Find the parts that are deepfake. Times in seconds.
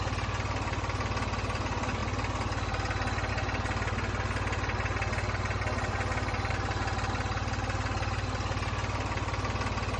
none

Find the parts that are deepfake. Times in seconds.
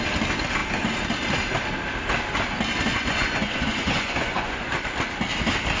2.9-4.7